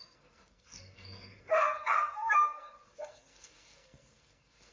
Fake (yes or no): yes